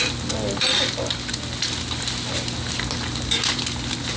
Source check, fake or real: real